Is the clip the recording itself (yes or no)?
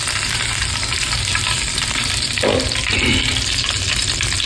yes